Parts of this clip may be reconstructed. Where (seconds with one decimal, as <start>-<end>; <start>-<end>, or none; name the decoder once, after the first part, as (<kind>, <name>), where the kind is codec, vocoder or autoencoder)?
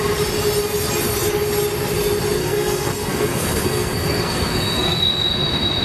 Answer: 2.4-5.1 (codec, SNAC)